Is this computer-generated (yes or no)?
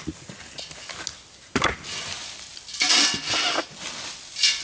no